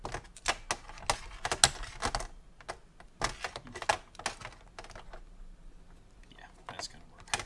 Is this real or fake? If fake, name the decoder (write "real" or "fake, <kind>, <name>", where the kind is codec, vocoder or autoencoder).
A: real